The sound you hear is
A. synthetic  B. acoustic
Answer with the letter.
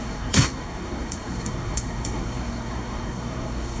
A